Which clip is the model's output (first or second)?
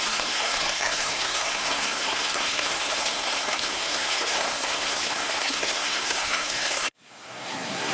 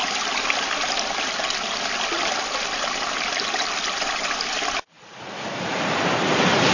first